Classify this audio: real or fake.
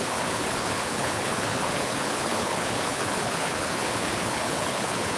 fake